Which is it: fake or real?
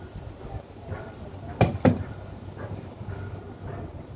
real